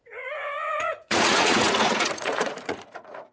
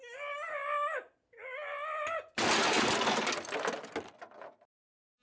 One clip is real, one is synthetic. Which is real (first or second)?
second